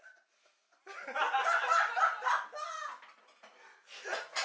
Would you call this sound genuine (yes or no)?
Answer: yes